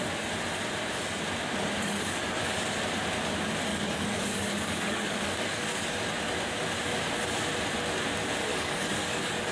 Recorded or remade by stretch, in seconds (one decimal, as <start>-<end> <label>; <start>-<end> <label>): 0.0-1.8 recorded; 1.8-2.4 remade; 2.4-3.7 recorded; 3.7-6.0 remade; 6.0-8.5 recorded; 8.5-9.5 remade

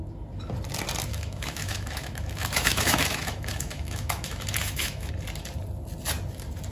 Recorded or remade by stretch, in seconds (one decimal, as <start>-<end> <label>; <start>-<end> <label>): 0.0-1.1 recorded; 1.1-5.1 remade; 5.1-6.7 recorded

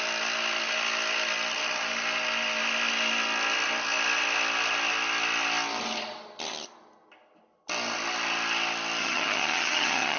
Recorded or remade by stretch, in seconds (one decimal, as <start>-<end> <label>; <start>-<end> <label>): 0.0-9.0 recorded; 9.0-10.2 remade

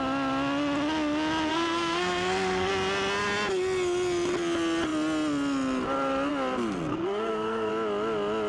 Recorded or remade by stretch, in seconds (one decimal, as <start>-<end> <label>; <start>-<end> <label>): 0.0-1.5 recorded; 1.5-2.7 remade; 2.7-6.9 recorded; 6.9-7.7 remade; 7.7-8.5 recorded

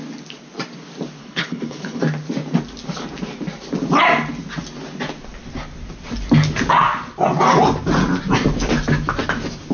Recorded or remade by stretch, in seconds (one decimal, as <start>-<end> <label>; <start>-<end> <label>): 0.0-1.2 recorded; 1.2-2.0 remade; 2.0-9.7 recorded

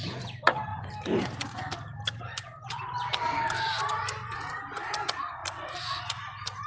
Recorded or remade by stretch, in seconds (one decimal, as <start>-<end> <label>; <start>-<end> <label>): 0.0-6.7 recorded